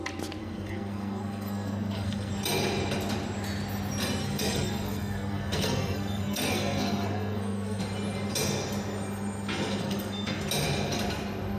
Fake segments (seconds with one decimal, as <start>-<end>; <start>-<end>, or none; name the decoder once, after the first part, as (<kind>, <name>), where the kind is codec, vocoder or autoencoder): 0.4-2.3 (codec, SNAC); 4.2-7.8; 9.8-10.4